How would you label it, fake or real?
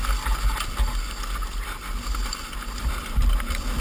real